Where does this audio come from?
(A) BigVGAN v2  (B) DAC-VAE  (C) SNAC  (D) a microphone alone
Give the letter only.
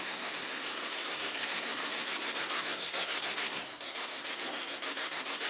C